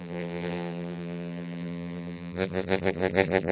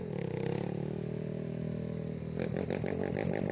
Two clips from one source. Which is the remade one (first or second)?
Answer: first